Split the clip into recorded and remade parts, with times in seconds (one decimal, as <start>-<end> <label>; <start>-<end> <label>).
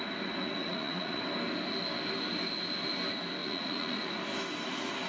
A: 0.0-0.4 recorded; 0.4-1.2 remade; 1.2-3.4 recorded; 3.4-4.1 remade; 4.1-5.1 recorded